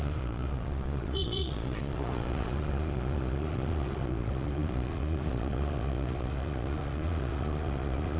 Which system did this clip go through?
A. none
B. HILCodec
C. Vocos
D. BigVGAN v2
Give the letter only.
C